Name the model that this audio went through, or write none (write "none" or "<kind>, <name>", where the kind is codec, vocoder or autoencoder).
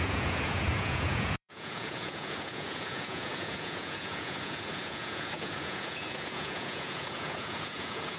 vocoder, Vocos